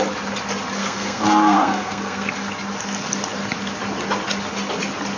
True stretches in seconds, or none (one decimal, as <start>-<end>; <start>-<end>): 0.0-0.8; 2.3-5.2